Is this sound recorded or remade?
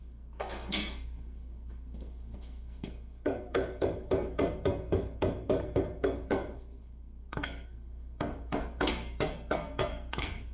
remade